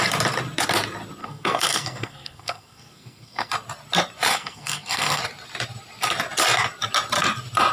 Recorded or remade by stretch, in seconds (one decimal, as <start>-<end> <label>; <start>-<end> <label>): 0.0-1.2 recorded; 1.2-3.5 remade; 3.5-4.3 recorded; 4.3-5.2 remade; 5.2-7.7 recorded